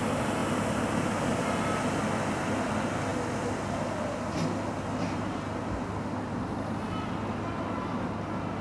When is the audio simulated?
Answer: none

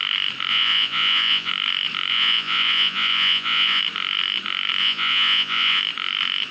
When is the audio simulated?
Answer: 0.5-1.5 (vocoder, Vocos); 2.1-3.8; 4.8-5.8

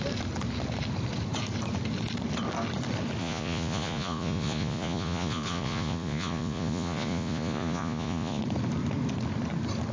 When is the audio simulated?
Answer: 3.2-8.4 (vocoder, Vocos)

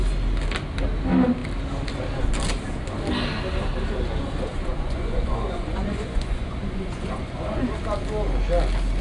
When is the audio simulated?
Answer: 4.5-7.6 (vocoder, Vocos)

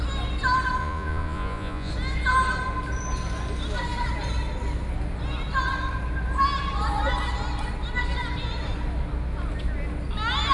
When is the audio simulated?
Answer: 0.8-1.9 (vocoder, Vocos)